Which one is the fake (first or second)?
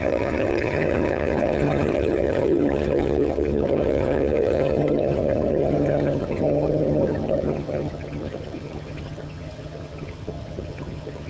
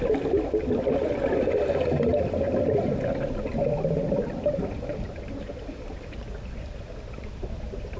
first